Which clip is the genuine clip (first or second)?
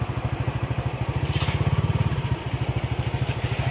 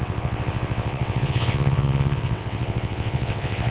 first